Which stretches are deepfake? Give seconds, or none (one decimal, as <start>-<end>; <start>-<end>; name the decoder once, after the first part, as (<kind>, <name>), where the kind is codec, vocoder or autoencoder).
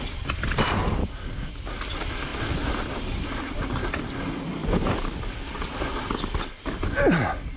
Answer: 1.0-1.5 (codec, DAC)